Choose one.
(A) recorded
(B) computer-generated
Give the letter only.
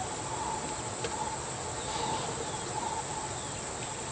A